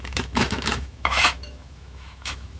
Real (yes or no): no